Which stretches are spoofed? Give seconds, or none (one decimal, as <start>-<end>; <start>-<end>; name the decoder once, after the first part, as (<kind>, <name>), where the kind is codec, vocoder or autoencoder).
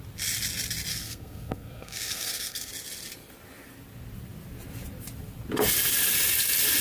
0.9-2.7 (codec, SNAC)